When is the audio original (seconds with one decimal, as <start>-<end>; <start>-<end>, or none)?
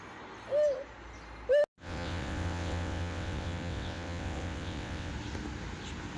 0.0-1.8; 5.1-6.2